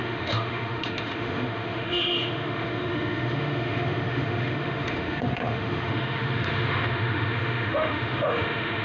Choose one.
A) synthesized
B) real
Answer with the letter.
A